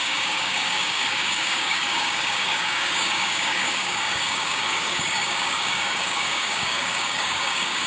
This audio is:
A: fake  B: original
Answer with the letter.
A